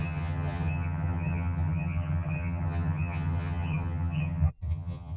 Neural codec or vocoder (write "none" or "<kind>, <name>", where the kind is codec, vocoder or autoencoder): vocoder, HiFi-GAN